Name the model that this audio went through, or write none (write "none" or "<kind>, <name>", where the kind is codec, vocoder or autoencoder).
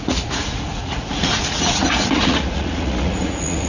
vocoder, Vocos